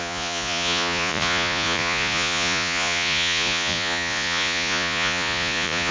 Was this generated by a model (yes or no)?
yes